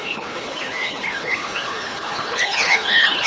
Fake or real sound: fake